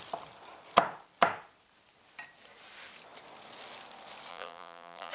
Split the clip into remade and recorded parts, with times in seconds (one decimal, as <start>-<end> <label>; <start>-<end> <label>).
0.0-4.3 recorded; 4.3-5.1 remade